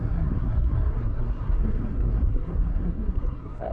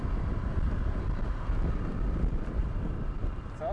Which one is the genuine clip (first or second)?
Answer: second